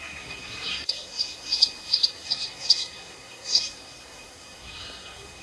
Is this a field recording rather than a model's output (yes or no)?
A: no